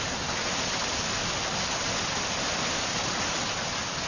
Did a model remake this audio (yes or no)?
no